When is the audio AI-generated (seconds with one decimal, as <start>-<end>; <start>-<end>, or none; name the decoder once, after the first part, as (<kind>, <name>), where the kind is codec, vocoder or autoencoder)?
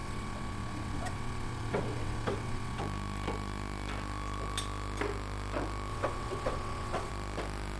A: 0.0-2.8 (vocoder, WaveNeXt); 5.9-7.1